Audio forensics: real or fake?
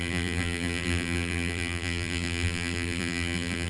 fake